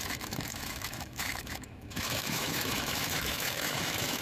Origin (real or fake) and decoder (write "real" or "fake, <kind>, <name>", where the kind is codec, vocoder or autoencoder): fake, autoencoder, DAC-VAE